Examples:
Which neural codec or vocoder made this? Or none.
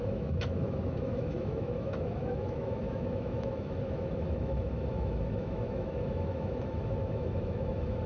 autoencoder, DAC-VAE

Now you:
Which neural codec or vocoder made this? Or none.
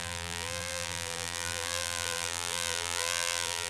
vocoder, BigVGAN v2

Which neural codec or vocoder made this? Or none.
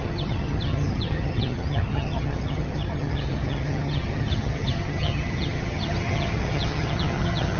vocoder, HiFi-GAN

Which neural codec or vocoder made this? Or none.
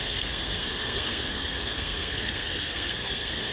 codec, SNAC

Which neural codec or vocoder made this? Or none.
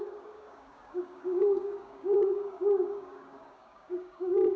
codec, DAC